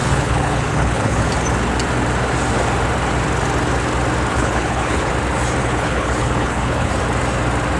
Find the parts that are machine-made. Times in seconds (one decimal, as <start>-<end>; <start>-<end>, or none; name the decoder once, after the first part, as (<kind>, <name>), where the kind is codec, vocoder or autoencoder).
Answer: 0.0-1.3 (codec, HILCodec); 4.3-5.1; 5.6-6.9